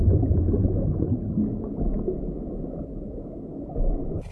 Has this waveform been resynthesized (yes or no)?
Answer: no